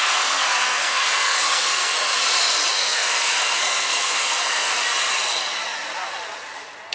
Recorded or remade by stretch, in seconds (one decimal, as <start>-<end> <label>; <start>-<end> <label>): 0.0-1.9 remade; 1.9-2.8 recorded; 2.8-4.8 remade; 4.8-6.9 recorded